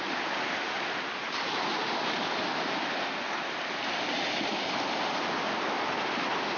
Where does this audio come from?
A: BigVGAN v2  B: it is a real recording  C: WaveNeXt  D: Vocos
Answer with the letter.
B